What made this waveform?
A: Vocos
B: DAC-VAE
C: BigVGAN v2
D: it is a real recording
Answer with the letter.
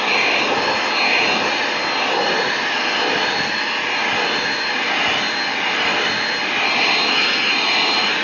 D